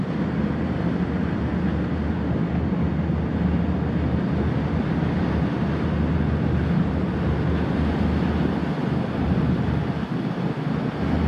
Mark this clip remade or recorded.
recorded